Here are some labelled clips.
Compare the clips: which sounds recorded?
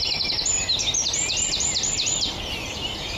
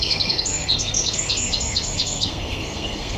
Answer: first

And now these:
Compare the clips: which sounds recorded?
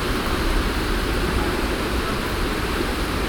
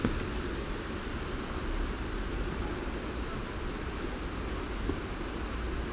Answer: second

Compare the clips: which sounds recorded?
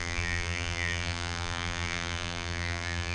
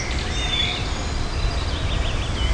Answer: second